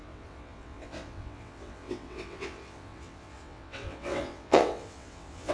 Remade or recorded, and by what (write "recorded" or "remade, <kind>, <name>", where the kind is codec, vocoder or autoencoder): remade, vocoder, WaveNeXt